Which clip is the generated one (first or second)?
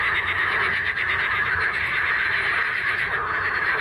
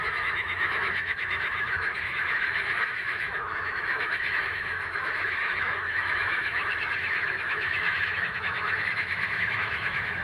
second